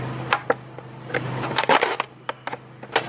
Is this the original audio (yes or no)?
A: yes